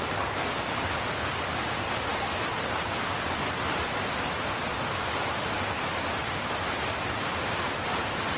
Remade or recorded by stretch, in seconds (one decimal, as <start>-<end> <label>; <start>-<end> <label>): 0.0-8.4 recorded